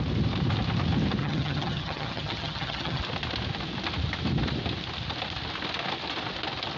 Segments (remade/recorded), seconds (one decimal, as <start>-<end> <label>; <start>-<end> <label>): 0.0-1.2 recorded; 1.2-3.0 remade; 3.0-6.8 recorded